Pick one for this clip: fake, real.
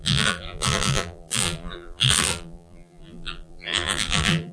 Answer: fake